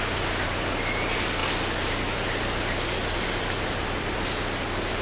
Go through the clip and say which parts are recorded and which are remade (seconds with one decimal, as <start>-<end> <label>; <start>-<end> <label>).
0.0-5.0 recorded